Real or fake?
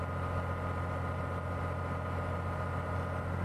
real